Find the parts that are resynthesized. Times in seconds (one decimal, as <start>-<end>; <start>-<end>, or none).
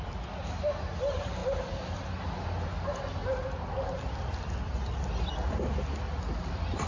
none